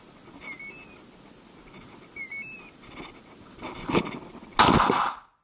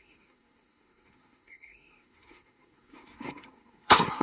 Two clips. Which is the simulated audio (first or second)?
second